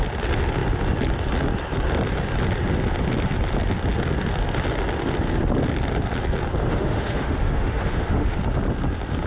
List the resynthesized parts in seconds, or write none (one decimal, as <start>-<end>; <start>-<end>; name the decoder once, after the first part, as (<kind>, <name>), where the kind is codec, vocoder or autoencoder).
6.6-8.4 (autoencoder, DAC-VAE)

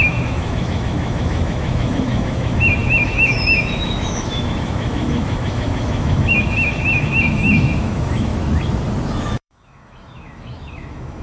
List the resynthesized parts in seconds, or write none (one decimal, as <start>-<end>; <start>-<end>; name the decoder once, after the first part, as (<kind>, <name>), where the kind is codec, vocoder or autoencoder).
0.0-8.3 (autoencoder, DAC-VAE); 9.2-11.2

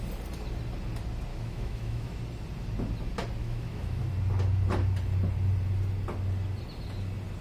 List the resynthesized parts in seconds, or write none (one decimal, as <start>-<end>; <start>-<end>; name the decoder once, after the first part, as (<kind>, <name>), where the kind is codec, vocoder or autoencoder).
1.3-2.2 (autoencoder, DAC-VAE); 3.4-4.0

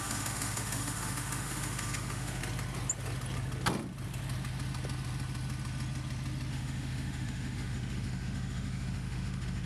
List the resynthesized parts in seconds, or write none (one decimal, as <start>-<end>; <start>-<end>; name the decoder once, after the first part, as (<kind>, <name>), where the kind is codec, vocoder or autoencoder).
0.0-2.4 (autoencoder, DAC-VAE); 6.5-9.7